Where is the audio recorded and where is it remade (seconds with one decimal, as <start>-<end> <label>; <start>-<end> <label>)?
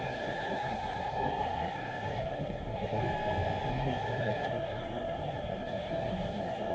0.0-3.0 remade; 3.0-3.7 recorded; 3.7-6.7 remade